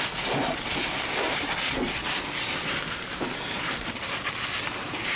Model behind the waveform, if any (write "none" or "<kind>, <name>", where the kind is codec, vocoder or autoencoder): none